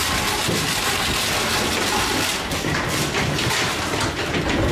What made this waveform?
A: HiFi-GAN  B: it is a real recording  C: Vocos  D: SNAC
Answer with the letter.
B